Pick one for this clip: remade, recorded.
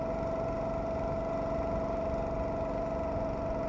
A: recorded